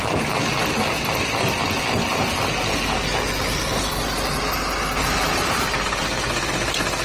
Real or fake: real